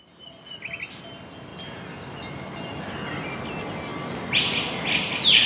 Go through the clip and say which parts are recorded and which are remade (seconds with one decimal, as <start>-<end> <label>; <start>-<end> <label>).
0.0-5.5 recorded